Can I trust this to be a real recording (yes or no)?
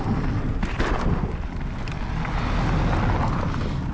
yes